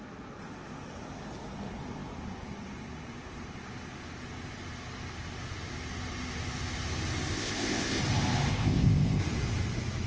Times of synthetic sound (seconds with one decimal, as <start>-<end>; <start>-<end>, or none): 7.3-8.0; 8.5-9.2

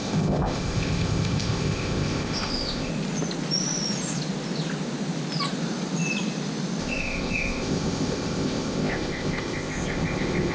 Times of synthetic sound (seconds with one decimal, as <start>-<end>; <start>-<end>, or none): 0.0-2.9; 6.8-10.5

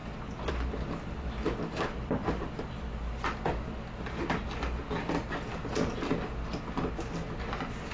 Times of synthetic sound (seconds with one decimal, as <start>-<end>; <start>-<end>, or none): none

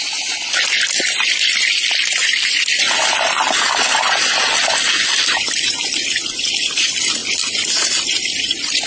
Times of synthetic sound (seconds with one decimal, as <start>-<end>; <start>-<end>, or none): none